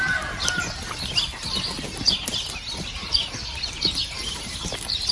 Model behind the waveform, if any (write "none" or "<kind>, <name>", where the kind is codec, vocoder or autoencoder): none